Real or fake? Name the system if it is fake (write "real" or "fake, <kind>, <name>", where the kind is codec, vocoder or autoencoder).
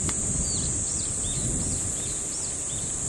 real